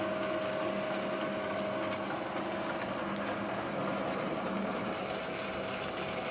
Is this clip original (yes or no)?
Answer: yes